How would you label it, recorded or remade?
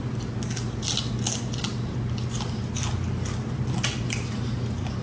recorded